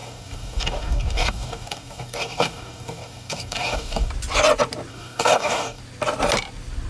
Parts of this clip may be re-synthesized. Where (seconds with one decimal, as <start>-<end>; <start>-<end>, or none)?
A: 0.0-4.1; 4.9-5.8